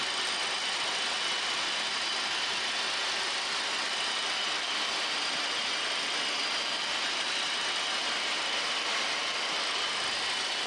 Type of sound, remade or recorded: recorded